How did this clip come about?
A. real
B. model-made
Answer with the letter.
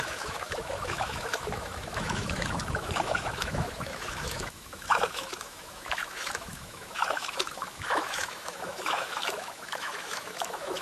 B